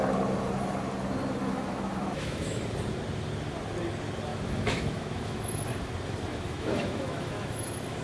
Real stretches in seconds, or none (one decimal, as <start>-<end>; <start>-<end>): 0.0-1.4; 2.6-4.3; 5.6-6.3

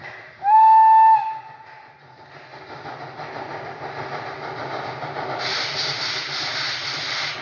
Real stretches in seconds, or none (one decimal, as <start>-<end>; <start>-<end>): 0.0-7.4

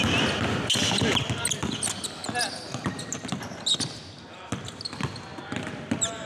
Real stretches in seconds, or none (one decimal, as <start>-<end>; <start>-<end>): 0.0-6.3

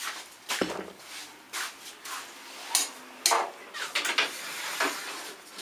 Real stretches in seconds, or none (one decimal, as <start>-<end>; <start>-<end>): 0.0-5.6

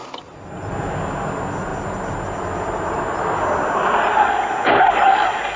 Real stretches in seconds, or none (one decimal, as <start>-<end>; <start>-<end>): 0.0-5.6

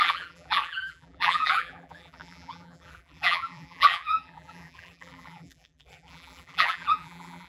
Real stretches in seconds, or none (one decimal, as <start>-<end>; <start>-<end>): none

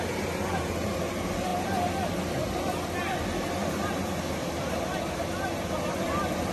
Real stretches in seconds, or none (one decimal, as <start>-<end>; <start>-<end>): 0.0-6.5